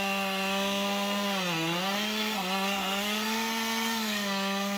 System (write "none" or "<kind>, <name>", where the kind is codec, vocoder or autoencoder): codec, SNAC